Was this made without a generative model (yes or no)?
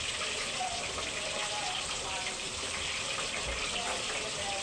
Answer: no